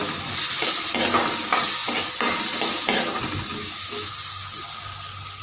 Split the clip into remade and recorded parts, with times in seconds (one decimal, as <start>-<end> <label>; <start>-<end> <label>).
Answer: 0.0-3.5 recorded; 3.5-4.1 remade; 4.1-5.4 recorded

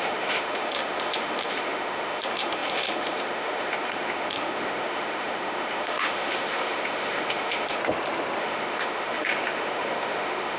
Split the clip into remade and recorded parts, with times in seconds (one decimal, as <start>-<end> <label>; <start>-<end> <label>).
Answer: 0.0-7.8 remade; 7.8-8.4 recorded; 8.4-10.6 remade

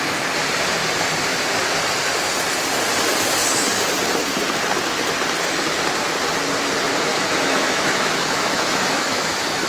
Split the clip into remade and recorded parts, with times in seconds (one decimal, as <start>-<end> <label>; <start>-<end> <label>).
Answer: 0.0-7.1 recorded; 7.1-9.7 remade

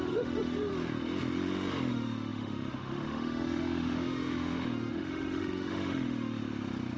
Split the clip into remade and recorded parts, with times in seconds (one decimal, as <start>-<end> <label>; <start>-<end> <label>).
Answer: 0.0-0.7 remade; 0.7-1.9 recorded; 1.9-6.4 remade; 6.4-7.0 recorded

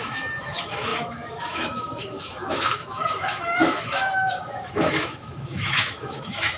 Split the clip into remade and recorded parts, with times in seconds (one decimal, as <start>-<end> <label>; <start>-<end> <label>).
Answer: 0.0-6.6 remade

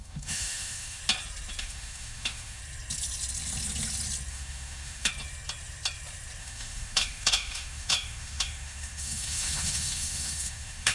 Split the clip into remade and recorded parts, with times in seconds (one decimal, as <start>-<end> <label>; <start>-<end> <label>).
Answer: 0.0-1.0 remade; 1.0-1.6 recorded; 1.6-2.6 remade; 2.6-4.3 recorded; 4.3-5.1 remade; 5.1-6.4 recorded; 6.4-10.9 remade

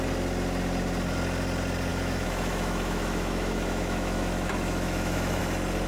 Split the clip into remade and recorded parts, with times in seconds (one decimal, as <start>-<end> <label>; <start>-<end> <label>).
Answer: 0.0-1.9 recorded; 1.9-5.4 remade; 5.4-5.9 recorded

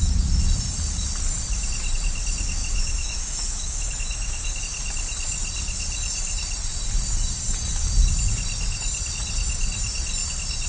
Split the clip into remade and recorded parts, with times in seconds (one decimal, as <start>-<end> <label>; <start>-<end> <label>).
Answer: 0.0-2.6 recorded; 2.6-4.6 remade; 4.6-10.7 recorded